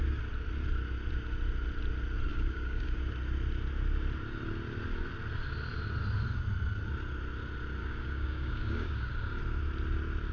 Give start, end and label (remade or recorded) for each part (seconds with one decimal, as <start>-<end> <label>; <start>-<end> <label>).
0.0-2.3 recorded; 2.3-3.0 remade; 3.0-7.8 recorded; 7.8-9.1 remade; 9.1-10.3 recorded